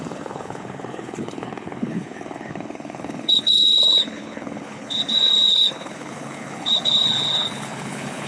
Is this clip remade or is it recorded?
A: remade